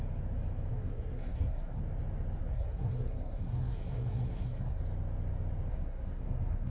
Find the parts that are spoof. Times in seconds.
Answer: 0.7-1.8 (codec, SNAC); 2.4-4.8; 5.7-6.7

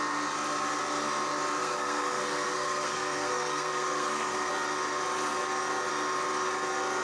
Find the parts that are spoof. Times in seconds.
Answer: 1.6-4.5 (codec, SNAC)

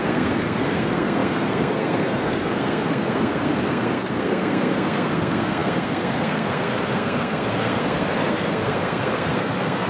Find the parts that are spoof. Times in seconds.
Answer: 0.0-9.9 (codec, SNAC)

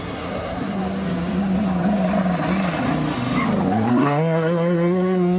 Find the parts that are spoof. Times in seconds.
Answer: 0.0-0.8 (codec, SNAC); 3.9-5.4

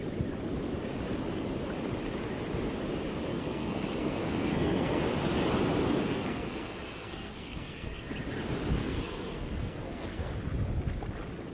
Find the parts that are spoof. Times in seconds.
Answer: 3.3-5.0 (codec, SNAC); 6.0-8.1; 8.8-10.3

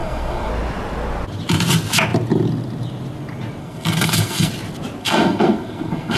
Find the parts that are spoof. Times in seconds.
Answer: 0.0-0.5 (codec, SNAC); 3.6-4.5; 5.0-6.2

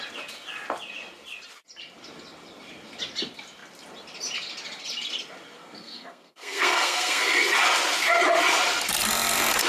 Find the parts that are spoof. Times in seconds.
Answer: 5.6-7.2 (codec, SNAC)

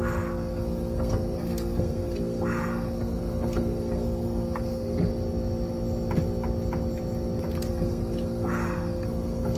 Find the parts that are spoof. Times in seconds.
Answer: 0.0-5.1 (codec, SNAC); 7.7-9.6